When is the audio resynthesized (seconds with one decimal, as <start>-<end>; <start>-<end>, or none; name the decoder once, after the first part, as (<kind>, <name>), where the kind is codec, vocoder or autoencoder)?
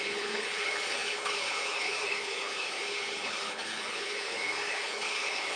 0.0-5.6 (codec, HILCodec)